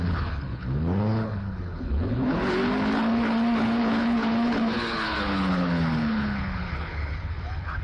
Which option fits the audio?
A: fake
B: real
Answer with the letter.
A